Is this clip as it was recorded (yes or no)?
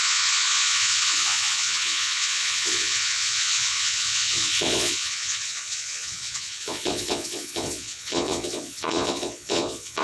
no